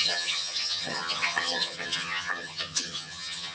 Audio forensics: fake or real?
fake